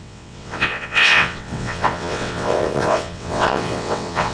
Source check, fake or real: fake